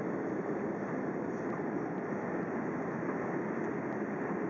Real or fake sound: real